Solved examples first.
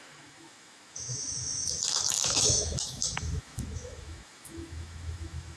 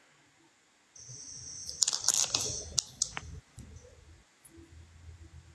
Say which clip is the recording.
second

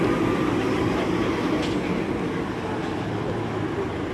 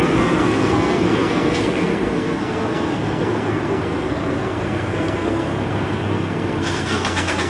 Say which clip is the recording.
first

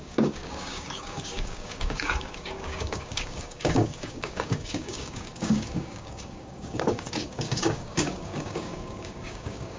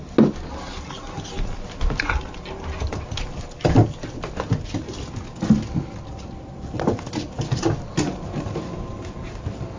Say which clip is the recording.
second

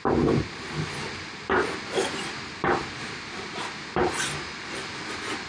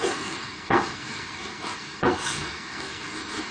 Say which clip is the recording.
first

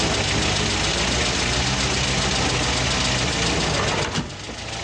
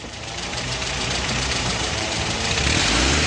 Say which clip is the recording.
first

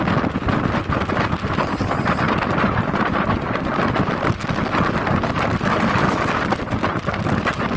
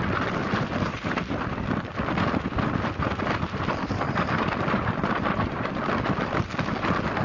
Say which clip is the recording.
first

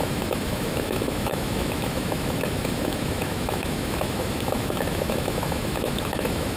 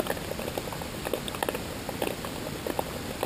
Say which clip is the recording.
second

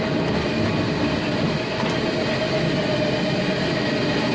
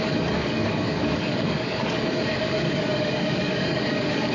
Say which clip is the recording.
first